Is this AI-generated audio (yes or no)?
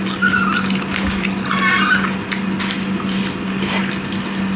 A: no